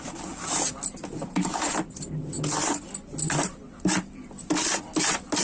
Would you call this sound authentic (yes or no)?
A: yes